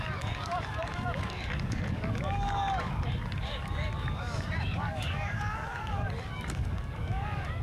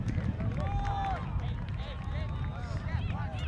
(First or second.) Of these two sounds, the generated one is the first